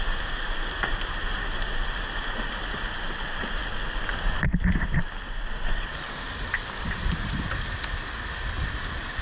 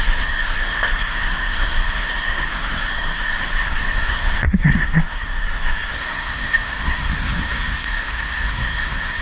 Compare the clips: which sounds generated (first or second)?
second